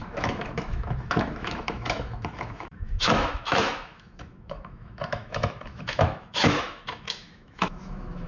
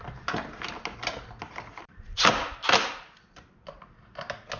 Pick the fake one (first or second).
first